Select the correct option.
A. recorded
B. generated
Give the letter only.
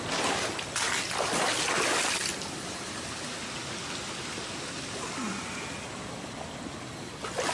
A